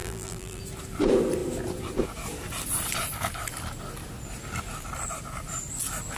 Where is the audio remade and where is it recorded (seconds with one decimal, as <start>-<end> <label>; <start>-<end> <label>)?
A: 0.0-0.6 remade; 0.6-6.2 recorded